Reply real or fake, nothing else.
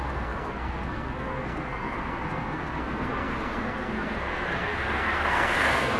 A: fake